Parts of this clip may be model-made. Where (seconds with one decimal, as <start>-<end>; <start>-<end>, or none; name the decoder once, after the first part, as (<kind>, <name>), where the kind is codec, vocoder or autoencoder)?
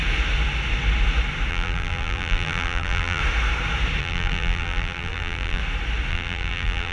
1.5-3.2 (vocoder, BigVGAN v2); 4.0-5.6; 6.1-6.9